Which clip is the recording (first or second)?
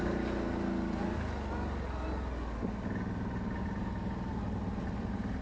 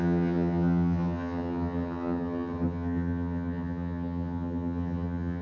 first